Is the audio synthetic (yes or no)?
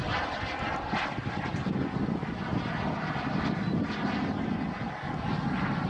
no